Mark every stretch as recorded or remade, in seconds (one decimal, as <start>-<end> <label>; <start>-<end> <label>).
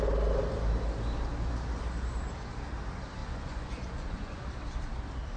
0.0-3.2 recorded; 3.2-4.5 remade; 4.5-5.4 recorded